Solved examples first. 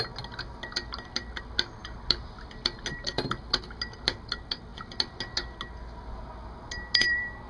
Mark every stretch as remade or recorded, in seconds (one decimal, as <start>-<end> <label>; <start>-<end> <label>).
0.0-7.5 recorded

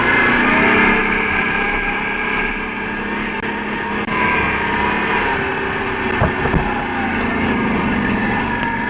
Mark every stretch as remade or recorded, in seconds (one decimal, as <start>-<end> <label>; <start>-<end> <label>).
0.0-8.9 recorded

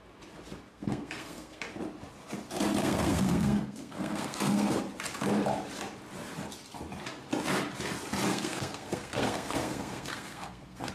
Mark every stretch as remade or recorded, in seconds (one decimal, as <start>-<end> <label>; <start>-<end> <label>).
0.0-0.7 recorded; 0.7-1.6 remade; 1.6-2.8 recorded; 2.8-4.8 remade; 4.8-8.3 recorded; 8.3-10.9 remade

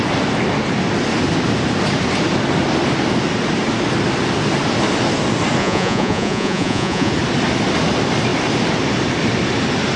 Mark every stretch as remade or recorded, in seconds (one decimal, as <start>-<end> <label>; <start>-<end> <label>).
0.0-5.6 recorded; 5.6-7.1 remade; 7.1-10.0 recorded

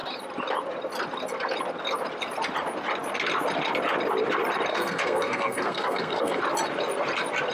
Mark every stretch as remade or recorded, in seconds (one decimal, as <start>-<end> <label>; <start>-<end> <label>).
0.0-4.7 recorded; 4.7-6.4 remade; 6.4-7.5 recorded

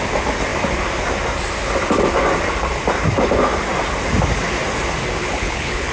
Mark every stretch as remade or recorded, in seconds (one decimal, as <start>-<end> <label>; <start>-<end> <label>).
0.0-5.2 recorded; 5.2-5.9 remade

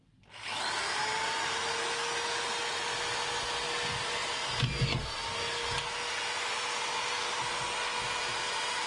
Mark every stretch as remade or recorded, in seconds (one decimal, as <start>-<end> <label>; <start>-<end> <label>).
0.0-8.9 recorded

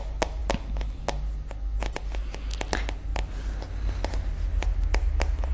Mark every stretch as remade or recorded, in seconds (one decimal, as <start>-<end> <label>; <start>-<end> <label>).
0.0-5.5 recorded